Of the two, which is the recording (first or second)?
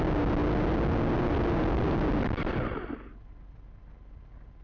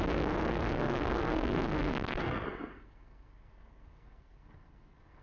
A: first